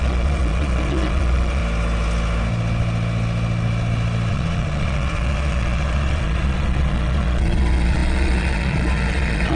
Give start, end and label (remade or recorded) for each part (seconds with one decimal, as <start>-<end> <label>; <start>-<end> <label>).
0.0-1.6 remade; 1.6-4.3 recorded; 4.3-9.6 remade